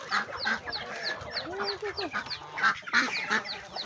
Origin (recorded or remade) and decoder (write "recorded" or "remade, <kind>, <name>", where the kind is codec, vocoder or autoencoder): recorded